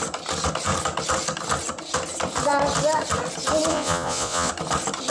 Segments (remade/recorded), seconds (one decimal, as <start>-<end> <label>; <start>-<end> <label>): 0.0-3.7 recorded; 3.7-4.5 remade; 4.5-5.1 recorded